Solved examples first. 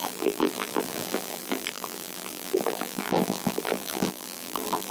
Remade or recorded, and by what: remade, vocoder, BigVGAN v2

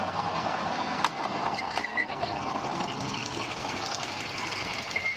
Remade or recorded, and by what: remade, codec, SNAC